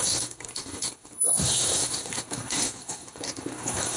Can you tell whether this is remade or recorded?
remade